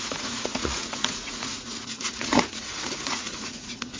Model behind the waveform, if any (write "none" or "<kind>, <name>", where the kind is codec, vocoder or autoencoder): vocoder, Vocos